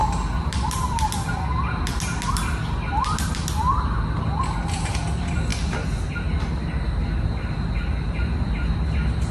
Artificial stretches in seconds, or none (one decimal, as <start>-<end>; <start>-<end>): 0.0-1.1